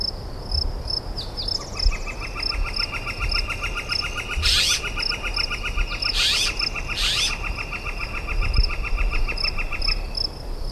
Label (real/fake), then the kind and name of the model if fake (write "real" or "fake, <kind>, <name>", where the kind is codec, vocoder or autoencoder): real